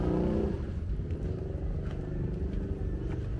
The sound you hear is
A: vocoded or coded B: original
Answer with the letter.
B